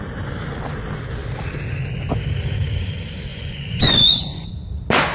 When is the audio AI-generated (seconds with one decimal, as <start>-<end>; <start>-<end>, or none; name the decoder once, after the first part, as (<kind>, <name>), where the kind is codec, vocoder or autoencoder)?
3.3-4.5 (vocoder, Vocos)